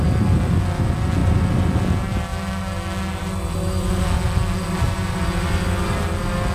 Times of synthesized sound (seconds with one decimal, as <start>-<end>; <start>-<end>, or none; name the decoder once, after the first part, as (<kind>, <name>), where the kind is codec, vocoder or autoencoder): none